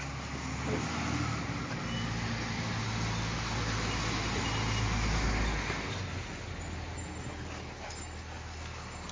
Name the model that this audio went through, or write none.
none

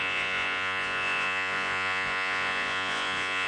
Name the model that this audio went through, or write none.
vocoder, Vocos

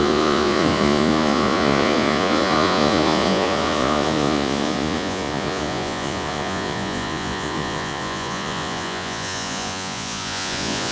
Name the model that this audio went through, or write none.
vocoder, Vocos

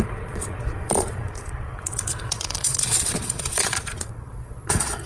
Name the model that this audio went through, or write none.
vocoder, Vocos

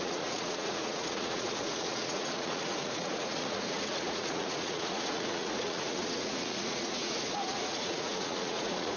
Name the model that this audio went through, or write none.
vocoder, Vocos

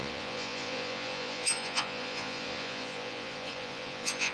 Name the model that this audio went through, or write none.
vocoder, Vocos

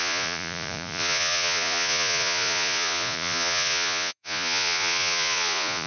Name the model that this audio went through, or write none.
vocoder, Vocos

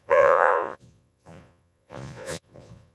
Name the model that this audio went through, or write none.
vocoder, Vocos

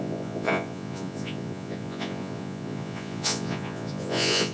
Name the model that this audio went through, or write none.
vocoder, Vocos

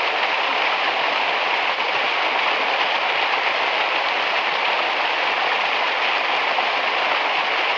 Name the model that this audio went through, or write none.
none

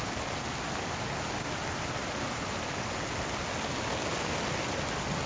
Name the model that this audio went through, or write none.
none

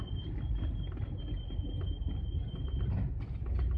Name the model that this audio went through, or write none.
none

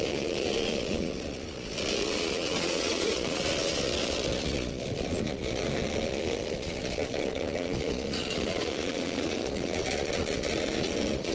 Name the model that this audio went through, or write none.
vocoder, Vocos